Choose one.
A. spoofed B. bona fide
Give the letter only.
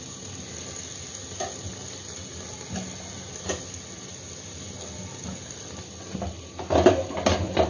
B